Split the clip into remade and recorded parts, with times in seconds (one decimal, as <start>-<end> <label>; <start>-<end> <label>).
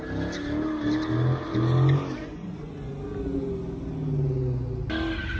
0.0-2.2 recorded; 2.2-2.9 remade; 2.9-5.4 recorded